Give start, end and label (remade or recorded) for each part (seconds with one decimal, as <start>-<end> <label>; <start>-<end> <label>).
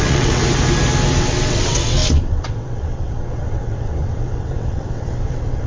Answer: 0.0-0.4 remade; 0.4-1.2 recorded; 1.2-5.7 remade